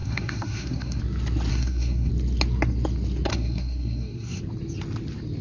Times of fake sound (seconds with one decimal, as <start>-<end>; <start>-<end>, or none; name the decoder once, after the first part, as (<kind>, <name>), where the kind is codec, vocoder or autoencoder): 0.0-1.0 (codec, SNAC); 1.5-2.1; 3.3-4.4